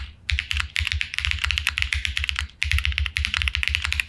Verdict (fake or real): real